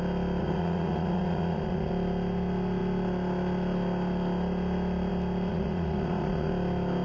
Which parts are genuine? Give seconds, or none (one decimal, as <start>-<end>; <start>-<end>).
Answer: 0.0-0.4; 1.9-5.5; 6.5-7.0